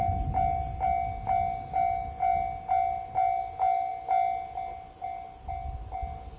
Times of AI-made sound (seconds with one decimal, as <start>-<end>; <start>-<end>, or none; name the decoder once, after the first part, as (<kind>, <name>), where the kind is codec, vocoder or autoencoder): none

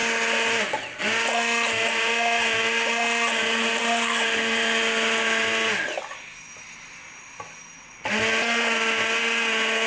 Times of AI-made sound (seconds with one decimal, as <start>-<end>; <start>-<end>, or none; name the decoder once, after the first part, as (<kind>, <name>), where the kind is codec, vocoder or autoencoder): none

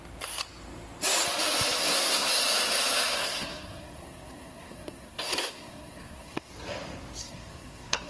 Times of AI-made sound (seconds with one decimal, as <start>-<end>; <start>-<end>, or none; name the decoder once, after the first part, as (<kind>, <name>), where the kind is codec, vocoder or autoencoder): 1.8-2.3 (codec, SNAC); 3.2-6.5; 7.2-8.1